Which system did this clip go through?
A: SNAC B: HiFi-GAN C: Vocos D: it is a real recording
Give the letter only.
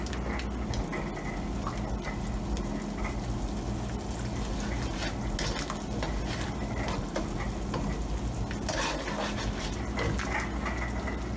D